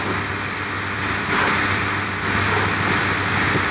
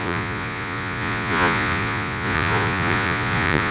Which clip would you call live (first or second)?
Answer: first